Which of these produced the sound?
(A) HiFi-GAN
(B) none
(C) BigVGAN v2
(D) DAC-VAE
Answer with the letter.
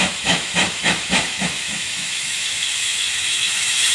D